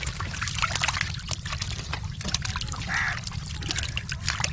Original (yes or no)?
yes